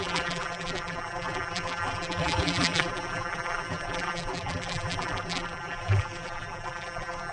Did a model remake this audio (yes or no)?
yes